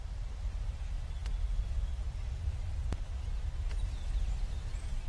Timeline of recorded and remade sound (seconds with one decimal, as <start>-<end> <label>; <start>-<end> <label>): 0.0-1.2 remade; 1.2-4.3 recorded; 4.3-5.1 remade